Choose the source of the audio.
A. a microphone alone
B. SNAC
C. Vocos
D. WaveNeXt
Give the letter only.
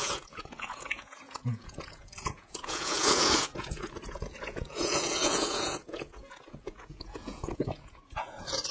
C